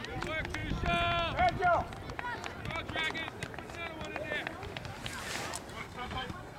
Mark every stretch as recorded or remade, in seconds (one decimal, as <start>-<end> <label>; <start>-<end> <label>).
0.0-5.8 recorded; 5.8-6.6 remade

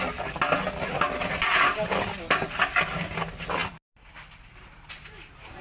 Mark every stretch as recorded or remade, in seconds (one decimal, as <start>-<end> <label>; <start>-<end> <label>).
0.0-5.6 recorded

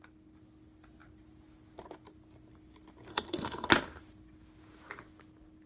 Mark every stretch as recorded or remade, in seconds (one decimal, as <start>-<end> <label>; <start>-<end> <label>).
0.0-3.1 recorded; 3.1-3.7 remade; 3.7-5.7 recorded